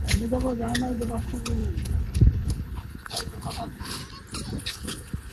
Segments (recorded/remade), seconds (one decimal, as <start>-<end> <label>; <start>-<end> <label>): 0.0-4.0 remade; 4.0-4.6 recorded; 4.6-5.3 remade